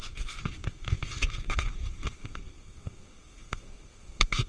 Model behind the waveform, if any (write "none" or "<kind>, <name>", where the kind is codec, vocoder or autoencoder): codec, SNAC